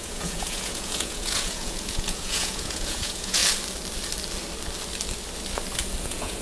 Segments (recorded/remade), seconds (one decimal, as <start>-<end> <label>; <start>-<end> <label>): 0.0-3.4 remade; 3.4-6.0 recorded; 6.0-6.4 remade